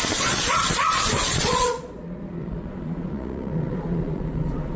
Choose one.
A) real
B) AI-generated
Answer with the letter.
B